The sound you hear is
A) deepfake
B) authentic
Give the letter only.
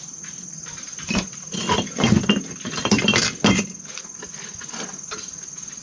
B